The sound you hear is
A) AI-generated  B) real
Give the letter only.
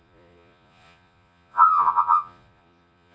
A